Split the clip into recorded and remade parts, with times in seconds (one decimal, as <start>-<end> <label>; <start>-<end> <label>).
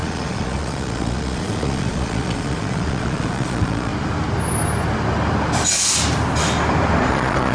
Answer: 0.0-3.9 remade; 3.9-7.1 recorded; 7.1-7.5 remade